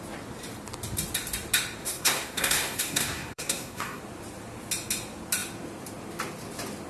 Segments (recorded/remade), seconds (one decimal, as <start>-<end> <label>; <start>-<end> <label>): 0.0-1.8 recorded; 1.8-4.0 remade; 4.0-6.9 recorded